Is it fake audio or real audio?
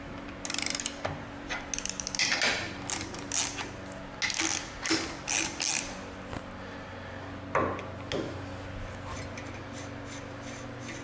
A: real